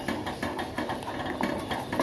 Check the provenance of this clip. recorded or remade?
recorded